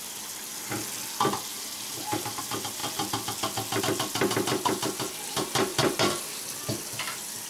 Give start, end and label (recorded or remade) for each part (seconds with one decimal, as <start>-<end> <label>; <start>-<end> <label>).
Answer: 0.0-1.5 recorded; 1.5-2.4 remade; 2.4-7.5 recorded